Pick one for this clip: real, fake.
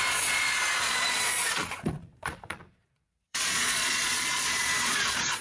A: fake